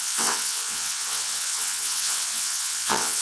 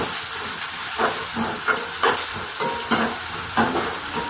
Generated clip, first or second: first